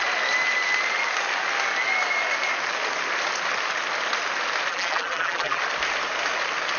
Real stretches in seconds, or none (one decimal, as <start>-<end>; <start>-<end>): 0.0-4.7; 5.6-6.8